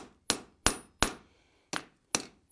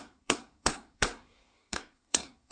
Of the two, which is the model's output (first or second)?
second